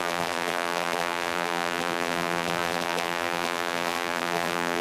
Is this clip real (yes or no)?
no